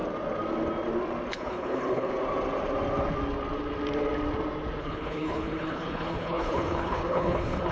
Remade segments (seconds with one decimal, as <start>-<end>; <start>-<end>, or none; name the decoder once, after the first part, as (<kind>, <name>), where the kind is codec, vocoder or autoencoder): 1.3-2.1 (codec, HILCodec); 4.8-7.7